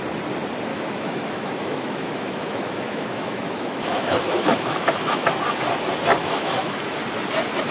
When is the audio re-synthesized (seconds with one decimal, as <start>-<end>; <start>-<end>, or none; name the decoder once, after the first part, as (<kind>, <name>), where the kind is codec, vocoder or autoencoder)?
0.7-5.3 (autoencoder, DAC-VAE); 6.2-6.8